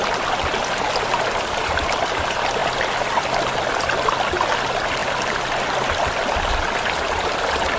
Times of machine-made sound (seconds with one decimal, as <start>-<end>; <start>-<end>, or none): none